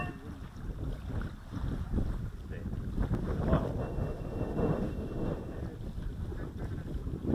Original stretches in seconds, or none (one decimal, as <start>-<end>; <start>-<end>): 0.0-3.8; 5.6-7.3